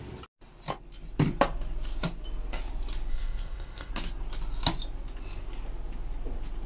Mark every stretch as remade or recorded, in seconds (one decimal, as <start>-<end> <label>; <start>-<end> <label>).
0.0-3.1 recorded; 3.1-3.9 remade; 3.9-6.7 recorded